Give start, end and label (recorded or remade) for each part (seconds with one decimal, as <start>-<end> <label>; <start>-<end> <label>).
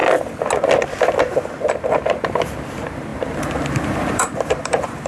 0.0-1.3 recorded; 1.3-5.1 remade